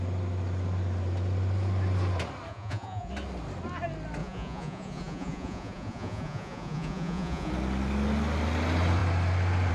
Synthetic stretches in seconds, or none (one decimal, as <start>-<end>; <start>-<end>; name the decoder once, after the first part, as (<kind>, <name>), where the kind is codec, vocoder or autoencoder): 2.5-3.1 (vocoder, Vocos); 4.2-7.5